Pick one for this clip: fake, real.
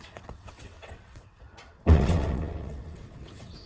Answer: fake